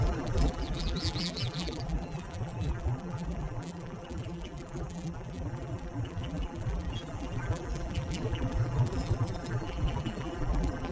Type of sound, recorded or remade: remade